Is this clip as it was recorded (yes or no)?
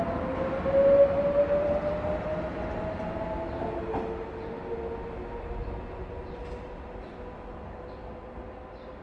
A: yes